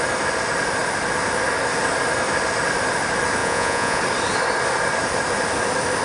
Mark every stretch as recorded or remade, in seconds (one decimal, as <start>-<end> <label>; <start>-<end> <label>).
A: 0.0-3.4 recorded; 3.4-4.0 remade; 4.0-6.0 recorded